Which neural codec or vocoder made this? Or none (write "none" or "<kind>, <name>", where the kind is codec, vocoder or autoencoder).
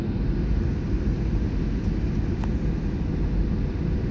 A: none